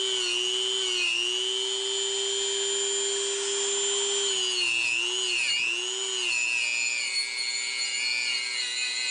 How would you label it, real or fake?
real